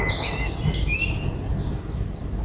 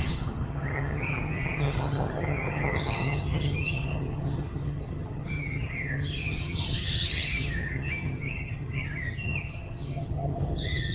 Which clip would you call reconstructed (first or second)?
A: second